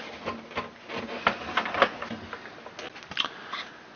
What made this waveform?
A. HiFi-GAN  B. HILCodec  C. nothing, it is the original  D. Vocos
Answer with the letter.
C